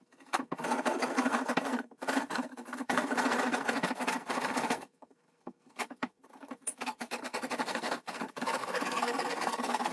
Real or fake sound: fake